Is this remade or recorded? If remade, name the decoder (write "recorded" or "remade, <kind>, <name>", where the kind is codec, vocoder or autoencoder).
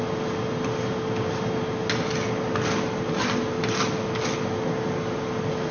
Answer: recorded